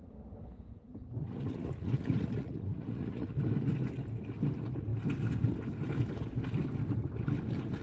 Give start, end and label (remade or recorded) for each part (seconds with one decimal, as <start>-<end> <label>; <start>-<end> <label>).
0.0-1.2 recorded; 1.2-3.4 remade; 3.4-7.8 recorded